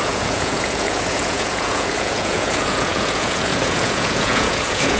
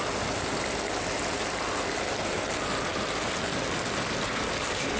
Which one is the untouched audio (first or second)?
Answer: second